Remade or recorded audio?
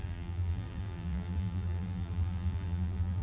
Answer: remade